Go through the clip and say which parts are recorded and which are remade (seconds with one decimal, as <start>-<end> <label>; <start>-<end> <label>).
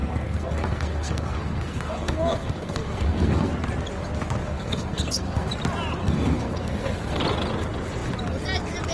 0.0-3.5 remade; 3.5-4.4 recorded; 4.4-5.5 remade; 5.5-6.0 recorded; 6.0-7.2 remade; 7.2-8.9 recorded